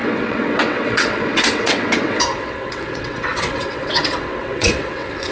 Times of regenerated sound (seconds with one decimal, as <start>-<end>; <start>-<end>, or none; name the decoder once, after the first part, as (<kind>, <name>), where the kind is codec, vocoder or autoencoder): 0.0-5.3 (vocoder, WaveNeXt)